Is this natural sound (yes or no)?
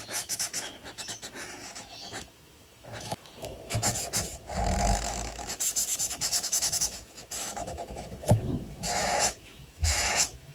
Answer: no